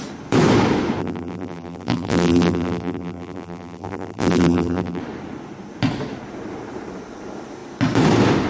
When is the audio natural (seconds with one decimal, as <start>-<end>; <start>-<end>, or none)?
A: 0.0-1.0; 5.0-8.5